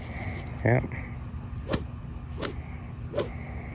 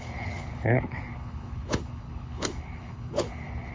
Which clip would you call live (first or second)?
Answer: first